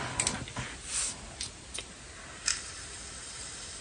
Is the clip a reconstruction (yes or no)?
no